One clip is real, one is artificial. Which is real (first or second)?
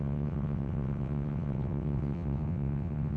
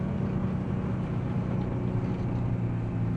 second